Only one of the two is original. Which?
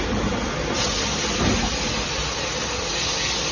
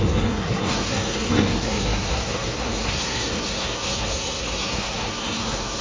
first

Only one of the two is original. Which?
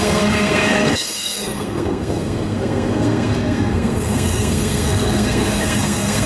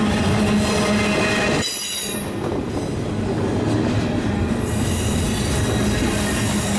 second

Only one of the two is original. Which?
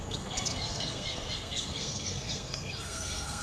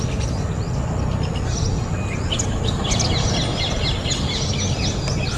second